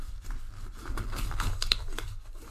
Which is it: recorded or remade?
remade